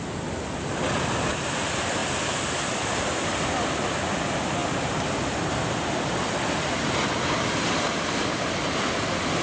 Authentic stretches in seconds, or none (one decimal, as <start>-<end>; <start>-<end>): 0.0-2.0; 2.5-4.6; 5.6-9.4